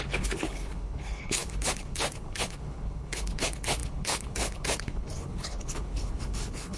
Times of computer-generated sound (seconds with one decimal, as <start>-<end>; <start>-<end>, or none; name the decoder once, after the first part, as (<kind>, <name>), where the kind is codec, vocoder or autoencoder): 0.0-6.8 (codec, HILCodec)